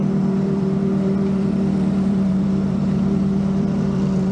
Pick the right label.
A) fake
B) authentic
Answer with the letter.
A